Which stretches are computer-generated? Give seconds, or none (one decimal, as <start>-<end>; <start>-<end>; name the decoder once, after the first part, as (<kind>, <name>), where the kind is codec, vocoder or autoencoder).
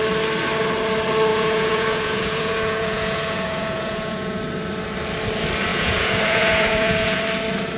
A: 1.3-4.4 (vocoder, Vocos); 5.7-7.2